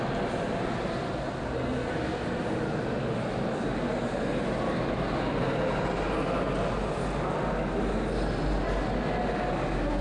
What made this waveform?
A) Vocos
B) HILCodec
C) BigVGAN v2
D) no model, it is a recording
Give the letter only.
D